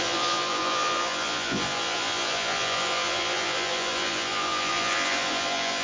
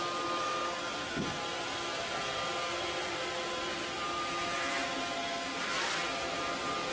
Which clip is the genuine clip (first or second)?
second